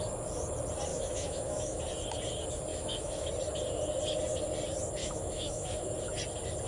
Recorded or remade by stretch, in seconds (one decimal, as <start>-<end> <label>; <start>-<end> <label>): 0.0-0.9 recorded; 0.9-1.8 remade; 1.8-2.7 recorded; 2.7-3.3 remade; 3.3-5.0 recorded; 5.0-5.9 remade; 5.9-6.7 recorded